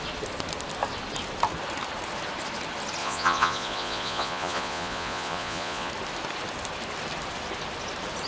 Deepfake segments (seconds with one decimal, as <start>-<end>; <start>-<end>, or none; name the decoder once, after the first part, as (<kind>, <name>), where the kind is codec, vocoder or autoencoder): 3.0-5.9 (vocoder, Vocos)